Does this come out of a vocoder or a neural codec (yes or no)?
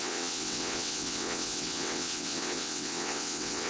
yes